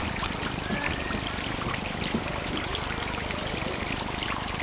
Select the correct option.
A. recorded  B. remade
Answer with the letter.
A